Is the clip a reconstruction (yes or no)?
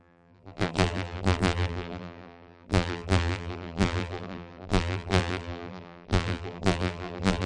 yes